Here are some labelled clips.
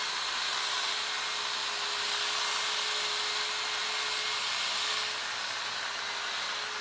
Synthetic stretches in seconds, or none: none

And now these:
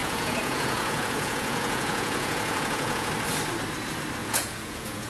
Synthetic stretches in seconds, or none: 0.0-3.1 (vocoder, Vocos); 4.2-5.1

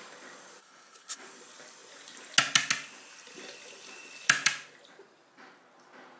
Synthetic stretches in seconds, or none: 0.6-1.2 (codec, HILCodec)

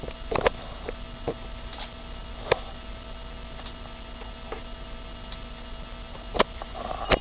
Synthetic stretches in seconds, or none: none

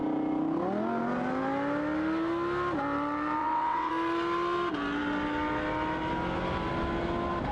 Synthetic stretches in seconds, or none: 3.4-3.9 (vocoder, WaveNeXt)

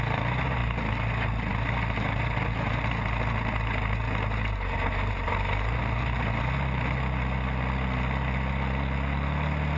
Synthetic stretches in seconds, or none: none

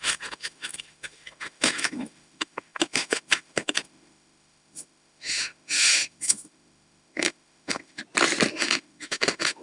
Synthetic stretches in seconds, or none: 0.0-8.0 (autoencoder, DAC-VAE); 8.5-9.6

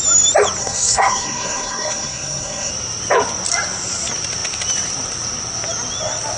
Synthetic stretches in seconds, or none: 0.6-2.7 (codec, SNAC)